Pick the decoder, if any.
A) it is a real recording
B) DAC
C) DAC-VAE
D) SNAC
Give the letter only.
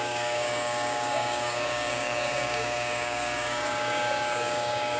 B